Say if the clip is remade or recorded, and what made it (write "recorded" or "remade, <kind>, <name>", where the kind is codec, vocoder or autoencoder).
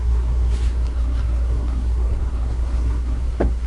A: remade, codec, SNAC